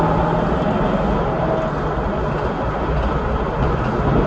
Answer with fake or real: real